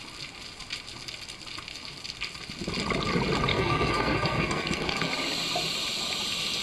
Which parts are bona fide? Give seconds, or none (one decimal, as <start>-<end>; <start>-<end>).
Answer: 0.0-3.5; 5.1-6.6